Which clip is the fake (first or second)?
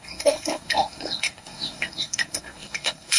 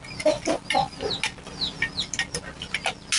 first